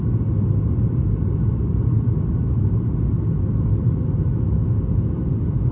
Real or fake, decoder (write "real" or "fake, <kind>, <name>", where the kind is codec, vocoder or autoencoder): real